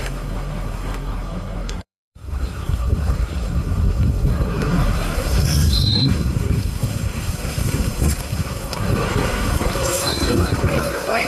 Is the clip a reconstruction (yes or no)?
yes